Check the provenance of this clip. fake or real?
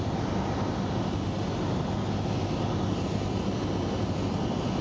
real